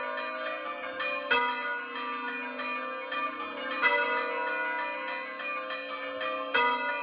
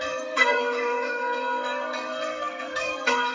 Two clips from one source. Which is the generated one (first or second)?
second